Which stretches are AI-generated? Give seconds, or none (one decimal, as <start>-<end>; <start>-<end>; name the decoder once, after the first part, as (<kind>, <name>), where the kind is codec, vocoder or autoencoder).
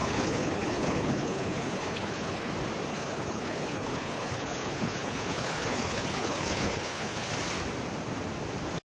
0.0-2.5 (codec, HILCodec); 2.9-7.3